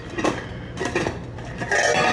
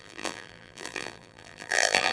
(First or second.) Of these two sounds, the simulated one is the second